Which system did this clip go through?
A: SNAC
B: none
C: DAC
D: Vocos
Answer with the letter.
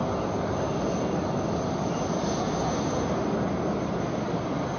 B